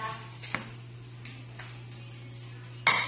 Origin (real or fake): real